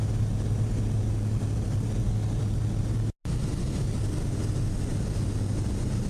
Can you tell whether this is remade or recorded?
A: recorded